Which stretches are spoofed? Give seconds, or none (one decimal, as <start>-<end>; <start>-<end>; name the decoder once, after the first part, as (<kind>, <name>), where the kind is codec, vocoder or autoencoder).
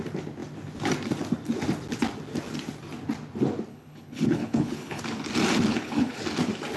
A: 3.7-5.0 (codec, HILCodec); 5.7-6.2